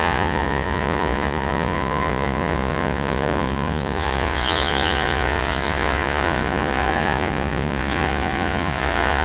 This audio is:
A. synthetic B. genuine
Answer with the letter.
A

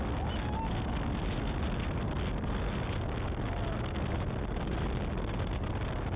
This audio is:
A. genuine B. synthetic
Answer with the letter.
A